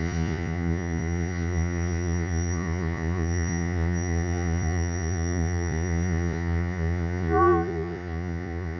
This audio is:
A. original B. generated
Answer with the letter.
B